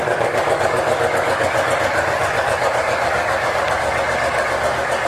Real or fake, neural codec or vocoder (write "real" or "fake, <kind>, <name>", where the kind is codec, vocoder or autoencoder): fake, codec, DAC